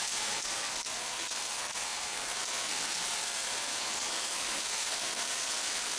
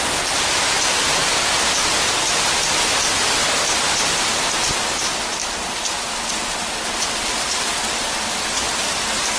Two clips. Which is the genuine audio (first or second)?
second